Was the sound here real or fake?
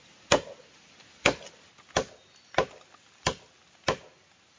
real